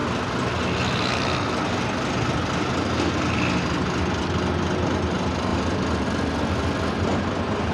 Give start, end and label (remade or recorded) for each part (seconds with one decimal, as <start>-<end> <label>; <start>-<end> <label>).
0.0-7.7 recorded